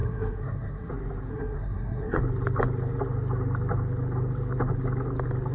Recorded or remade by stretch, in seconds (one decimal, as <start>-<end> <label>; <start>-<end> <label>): 0.0-0.9 remade; 0.9-1.3 recorded; 1.3-2.2 remade; 2.2-5.5 recorded